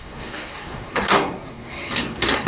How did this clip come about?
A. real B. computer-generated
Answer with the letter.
B